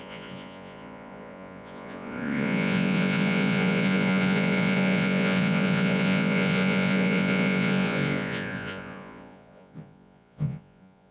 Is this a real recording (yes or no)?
no